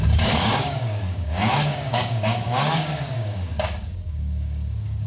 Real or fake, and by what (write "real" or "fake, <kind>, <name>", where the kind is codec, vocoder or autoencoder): fake, codec, DAC